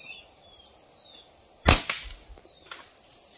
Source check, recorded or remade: recorded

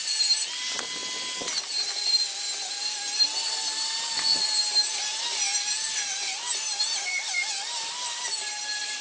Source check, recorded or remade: recorded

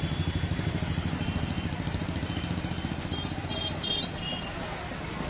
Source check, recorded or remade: recorded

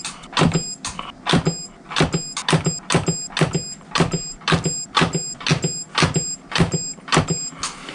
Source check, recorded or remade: recorded